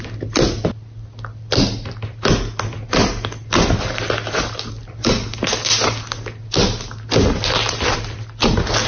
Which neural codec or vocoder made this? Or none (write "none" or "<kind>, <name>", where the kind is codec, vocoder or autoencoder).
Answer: none